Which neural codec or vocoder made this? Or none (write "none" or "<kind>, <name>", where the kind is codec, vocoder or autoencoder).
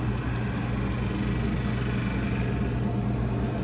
none